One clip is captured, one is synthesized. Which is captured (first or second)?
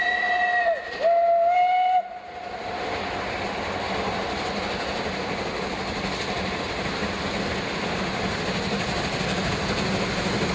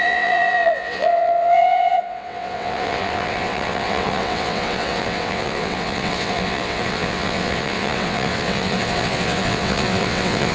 first